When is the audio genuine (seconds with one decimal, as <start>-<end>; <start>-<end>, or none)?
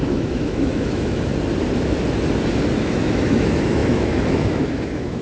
1.3-2.7